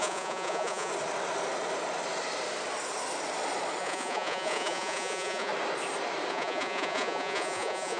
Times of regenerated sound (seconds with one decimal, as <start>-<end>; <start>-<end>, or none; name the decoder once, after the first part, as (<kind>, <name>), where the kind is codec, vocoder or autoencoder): 0.0-0.9 (vocoder, Vocos); 3.8-5.5; 6.3-8.0